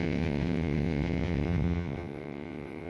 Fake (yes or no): yes